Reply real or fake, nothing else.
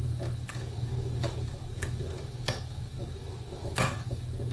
fake